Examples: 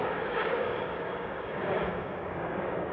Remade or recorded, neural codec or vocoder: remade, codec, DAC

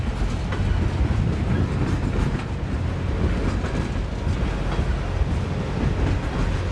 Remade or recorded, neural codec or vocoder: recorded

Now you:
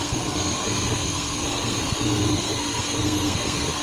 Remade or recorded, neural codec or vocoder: remade, codec, SNAC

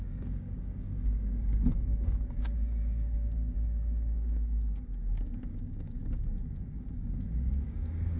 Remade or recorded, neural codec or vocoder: remade, codec, DAC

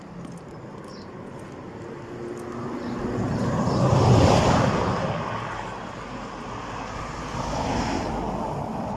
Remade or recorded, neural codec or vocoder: recorded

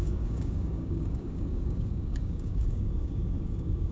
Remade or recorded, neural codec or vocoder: remade, codec, DAC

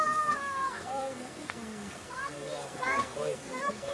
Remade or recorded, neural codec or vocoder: remade, codec, SNAC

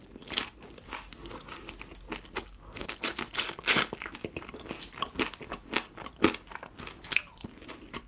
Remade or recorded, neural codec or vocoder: recorded